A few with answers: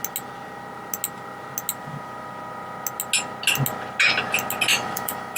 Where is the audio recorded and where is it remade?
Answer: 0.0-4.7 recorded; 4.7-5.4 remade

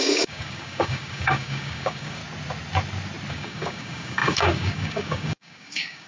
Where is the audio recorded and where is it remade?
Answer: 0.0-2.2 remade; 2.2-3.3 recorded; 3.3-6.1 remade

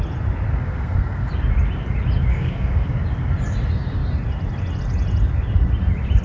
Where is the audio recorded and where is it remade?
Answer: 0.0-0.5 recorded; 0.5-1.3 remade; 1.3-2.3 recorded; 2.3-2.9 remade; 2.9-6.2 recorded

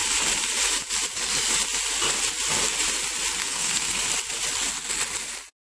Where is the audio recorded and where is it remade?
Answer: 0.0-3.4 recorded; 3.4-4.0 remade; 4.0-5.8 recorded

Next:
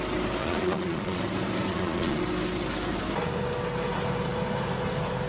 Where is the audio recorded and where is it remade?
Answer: 0.0-0.4 recorded; 0.4-1.2 remade; 1.2-1.7 recorded; 1.7-2.2 remade; 2.2-5.3 recorded